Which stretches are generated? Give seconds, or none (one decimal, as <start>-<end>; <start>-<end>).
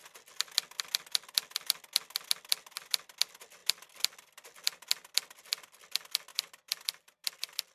6.3-7.2